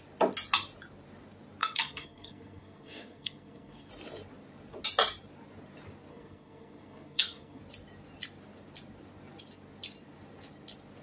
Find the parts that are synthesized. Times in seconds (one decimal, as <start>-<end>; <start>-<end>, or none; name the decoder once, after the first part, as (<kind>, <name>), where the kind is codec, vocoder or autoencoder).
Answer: 1.6-3.9 (codec, SNAC); 6.1-7.6

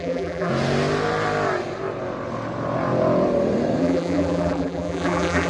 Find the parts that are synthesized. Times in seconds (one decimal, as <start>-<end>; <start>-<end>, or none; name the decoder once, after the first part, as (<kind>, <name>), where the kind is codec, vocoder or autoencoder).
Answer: 0.0-0.5 (vocoder, BigVGAN v2); 3.8-5.5

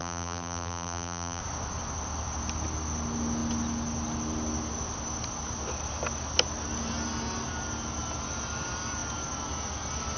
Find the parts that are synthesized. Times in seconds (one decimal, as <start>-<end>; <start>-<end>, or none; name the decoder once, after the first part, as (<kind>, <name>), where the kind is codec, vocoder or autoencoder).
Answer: 0.0-1.4 (vocoder, BigVGAN v2)

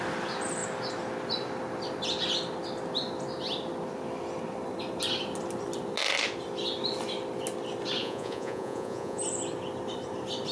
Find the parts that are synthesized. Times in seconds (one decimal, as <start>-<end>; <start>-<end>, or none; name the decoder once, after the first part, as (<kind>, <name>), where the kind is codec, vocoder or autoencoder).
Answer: 8.0-9.2 (vocoder, Vocos)

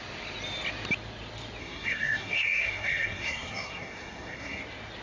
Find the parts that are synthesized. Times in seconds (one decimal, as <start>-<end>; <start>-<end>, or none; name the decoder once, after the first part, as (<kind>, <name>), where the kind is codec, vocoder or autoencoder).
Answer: 1.6-4.6 (codec, SNAC)